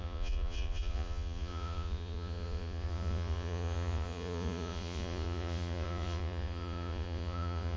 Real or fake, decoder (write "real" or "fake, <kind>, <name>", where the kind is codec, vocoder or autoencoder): fake, vocoder, Vocos